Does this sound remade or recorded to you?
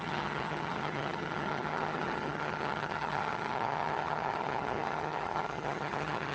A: remade